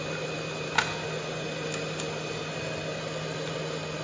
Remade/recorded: recorded